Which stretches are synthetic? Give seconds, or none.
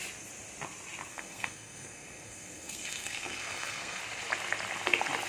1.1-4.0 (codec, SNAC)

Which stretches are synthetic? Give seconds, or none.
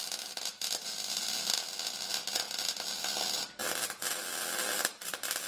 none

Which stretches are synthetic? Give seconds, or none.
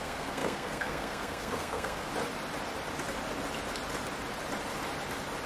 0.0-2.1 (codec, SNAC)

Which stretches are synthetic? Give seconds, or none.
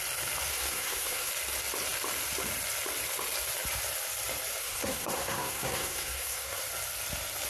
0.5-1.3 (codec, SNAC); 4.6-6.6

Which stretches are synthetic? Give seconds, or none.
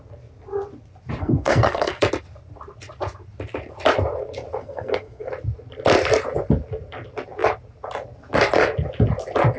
1.2-2.0 (codec, SNAC); 4.6-5.3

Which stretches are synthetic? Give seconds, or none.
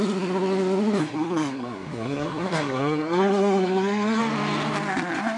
1.0-4.2 (codec, SNAC)